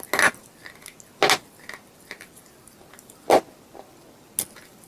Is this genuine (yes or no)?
yes